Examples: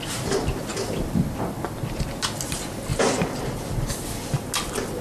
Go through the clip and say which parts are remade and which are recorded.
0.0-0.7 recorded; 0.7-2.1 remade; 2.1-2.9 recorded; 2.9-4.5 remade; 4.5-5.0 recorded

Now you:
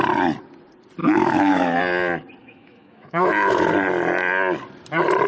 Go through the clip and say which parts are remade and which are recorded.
0.0-1.0 recorded; 1.0-1.8 remade; 1.8-2.4 recorded; 2.4-3.7 remade; 3.7-5.3 recorded

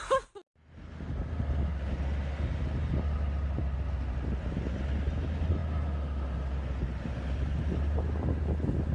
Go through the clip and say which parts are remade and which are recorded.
0.0-8.9 recorded

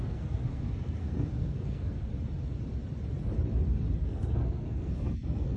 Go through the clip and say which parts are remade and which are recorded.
0.0-2.1 remade; 2.1-4.0 recorded; 4.0-5.6 remade

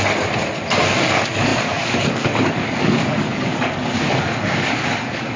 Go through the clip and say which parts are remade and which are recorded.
0.0-0.9 recorded; 0.9-5.4 remade

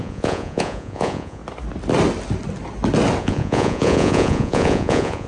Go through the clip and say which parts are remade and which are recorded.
0.0-1.4 remade; 1.4-3.2 recorded; 3.2-5.3 remade

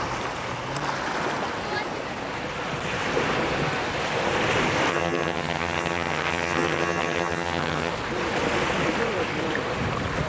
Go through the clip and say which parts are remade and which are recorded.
0.0-4.9 recorded; 4.9-7.9 remade; 7.9-10.3 recorded

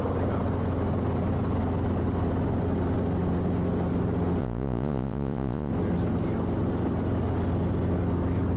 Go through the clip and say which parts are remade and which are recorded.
0.0-4.4 recorded; 4.4-5.7 remade; 5.7-8.6 recorded